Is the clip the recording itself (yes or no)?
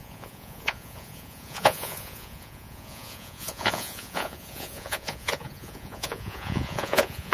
no